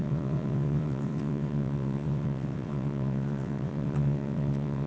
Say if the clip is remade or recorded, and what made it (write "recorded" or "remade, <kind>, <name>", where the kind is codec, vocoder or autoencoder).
remade, vocoder, WaveNeXt